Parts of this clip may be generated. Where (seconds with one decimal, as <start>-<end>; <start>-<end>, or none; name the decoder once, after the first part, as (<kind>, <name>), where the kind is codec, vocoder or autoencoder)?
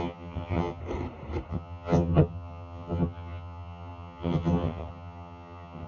0.0-0.8 (vocoder, HiFi-GAN); 1.5-5.9